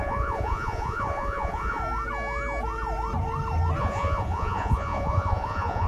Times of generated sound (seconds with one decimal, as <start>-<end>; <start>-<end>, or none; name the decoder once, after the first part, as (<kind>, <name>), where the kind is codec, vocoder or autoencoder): 0.0-1.8 (vocoder, Vocos); 3.8-5.9